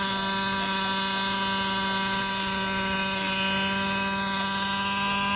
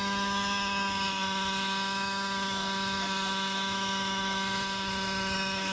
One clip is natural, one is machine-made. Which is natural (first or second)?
first